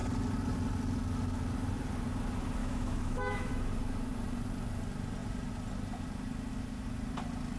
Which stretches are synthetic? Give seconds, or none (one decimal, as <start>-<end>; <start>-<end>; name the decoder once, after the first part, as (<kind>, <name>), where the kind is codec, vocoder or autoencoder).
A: 2.6-3.5 (autoencoder, DAC-VAE)